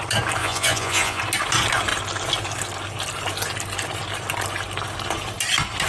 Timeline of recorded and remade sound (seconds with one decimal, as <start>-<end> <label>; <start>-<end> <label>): 0.0-0.4 recorded; 0.4-1.2 remade; 1.2-5.9 recorded